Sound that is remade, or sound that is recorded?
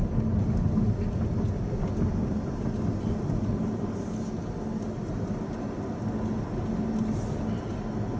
recorded